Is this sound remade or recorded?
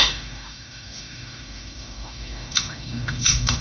remade